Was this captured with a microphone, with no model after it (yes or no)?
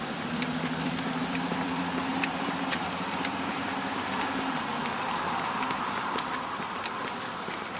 no